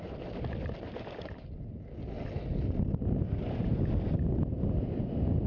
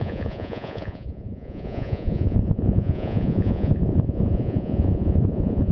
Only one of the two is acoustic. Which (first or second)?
first